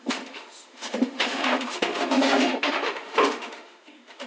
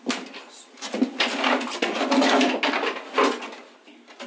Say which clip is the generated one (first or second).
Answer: first